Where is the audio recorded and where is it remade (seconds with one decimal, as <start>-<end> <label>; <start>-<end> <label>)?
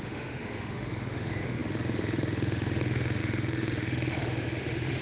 0.0-5.0 remade